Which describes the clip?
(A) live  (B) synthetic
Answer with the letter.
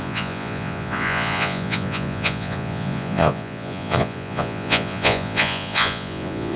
B